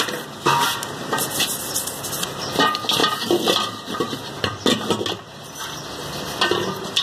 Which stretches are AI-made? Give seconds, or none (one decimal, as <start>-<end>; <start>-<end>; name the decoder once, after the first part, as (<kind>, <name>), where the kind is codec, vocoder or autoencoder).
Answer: none